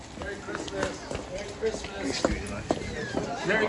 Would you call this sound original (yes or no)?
yes